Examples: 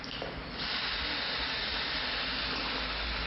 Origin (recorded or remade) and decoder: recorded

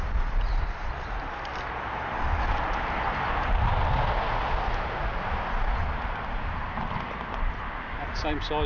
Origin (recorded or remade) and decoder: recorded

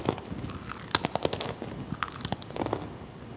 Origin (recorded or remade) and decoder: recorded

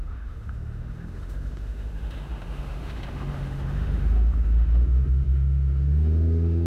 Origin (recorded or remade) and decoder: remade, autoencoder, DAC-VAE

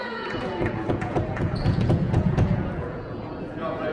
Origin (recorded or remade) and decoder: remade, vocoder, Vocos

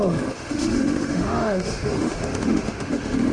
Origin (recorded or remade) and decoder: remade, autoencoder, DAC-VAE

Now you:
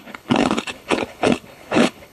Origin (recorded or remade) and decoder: remade, codec, HILCodec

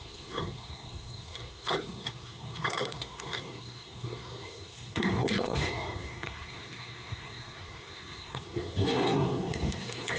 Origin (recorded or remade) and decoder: remade, codec, SNAC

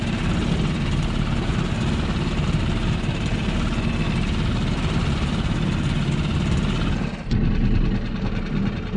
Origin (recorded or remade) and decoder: recorded